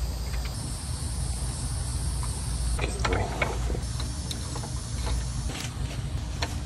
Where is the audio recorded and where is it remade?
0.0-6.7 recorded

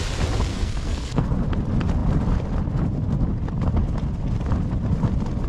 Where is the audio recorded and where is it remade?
0.0-0.5 recorded; 0.5-1.3 remade; 1.3-5.5 recorded

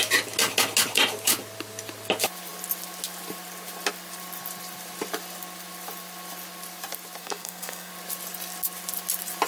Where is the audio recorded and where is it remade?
0.0-7.2 recorded; 7.2-7.9 remade; 7.9-9.5 recorded

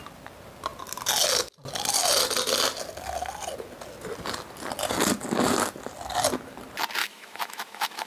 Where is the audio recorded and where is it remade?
0.0-7.0 recorded; 7.0-8.1 remade

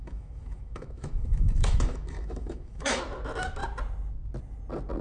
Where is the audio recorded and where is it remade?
0.0-3.0 remade; 3.0-5.0 recorded

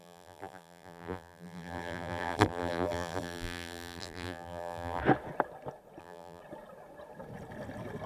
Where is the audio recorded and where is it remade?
0.0-5.0 remade; 5.0-6.0 recorded; 6.0-6.4 remade; 6.4-8.1 recorded

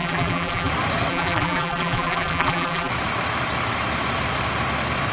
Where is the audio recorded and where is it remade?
0.0-0.7 remade; 0.7-1.1 recorded; 1.1-2.9 remade; 2.9-5.1 recorded